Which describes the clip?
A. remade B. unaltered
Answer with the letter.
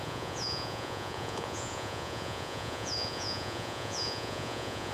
A